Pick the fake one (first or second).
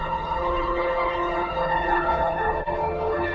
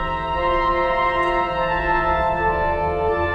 first